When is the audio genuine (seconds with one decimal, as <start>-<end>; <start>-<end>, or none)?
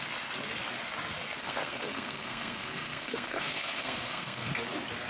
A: 0.0-1.4; 4.5-5.1